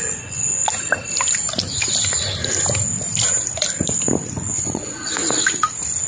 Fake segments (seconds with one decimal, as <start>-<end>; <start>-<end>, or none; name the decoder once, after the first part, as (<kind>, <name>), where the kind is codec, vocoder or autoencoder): 0.0-0.6 (vocoder, Vocos); 4.3-5.2